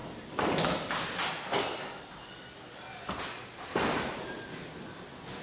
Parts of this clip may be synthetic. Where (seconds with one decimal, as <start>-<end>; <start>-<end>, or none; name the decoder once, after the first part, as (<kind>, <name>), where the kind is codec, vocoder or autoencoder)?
3.7-4.5 (vocoder, BigVGAN v2)